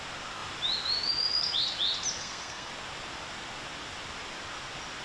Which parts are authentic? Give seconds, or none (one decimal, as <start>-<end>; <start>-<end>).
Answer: 0.0-2.2; 2.7-5.0